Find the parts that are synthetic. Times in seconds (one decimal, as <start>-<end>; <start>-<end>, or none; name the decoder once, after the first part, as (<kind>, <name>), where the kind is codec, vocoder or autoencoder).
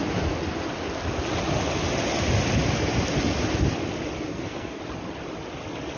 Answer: 4.3-4.8 (codec, SNAC)